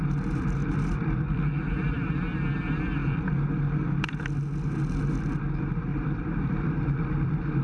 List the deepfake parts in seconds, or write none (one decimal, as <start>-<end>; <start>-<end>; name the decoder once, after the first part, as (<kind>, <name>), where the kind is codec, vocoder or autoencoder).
0.6-2.1 (vocoder, BigVGAN v2); 5.9-7.6